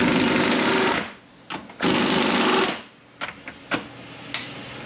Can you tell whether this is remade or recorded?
recorded